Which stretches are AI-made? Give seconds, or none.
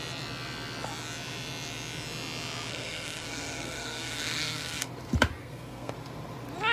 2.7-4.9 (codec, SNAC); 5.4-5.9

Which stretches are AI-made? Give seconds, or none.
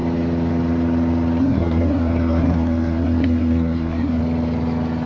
1.4-4.2 (codec, SNAC)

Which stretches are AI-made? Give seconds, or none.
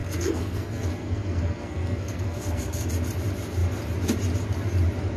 0.0-2.9 (codec, SNAC)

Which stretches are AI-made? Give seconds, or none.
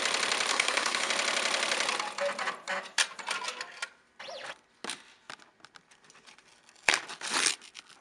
0.5-1.1 (codec, SNAC)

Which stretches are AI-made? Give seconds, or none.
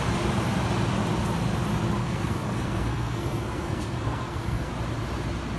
2.0-4.7 (codec, SNAC)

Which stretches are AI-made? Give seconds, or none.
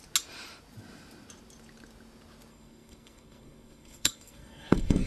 2.5-5.1 (codec, SNAC)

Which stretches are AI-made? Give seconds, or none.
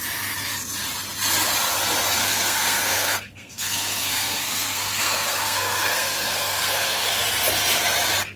2.2-7.2 (codec, SNAC)